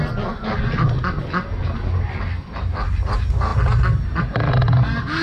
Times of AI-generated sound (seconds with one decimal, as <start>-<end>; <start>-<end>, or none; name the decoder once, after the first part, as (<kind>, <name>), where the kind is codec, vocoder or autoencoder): none